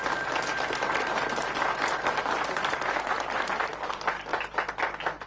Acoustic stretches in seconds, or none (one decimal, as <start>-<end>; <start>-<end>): 0.0-4.3